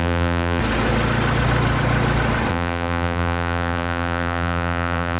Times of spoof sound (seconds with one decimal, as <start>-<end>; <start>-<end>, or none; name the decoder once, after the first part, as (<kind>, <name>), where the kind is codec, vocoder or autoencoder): 0.0-0.6 (vocoder, BigVGAN v2); 2.5-5.2